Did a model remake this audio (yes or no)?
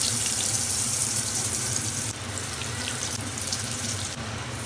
yes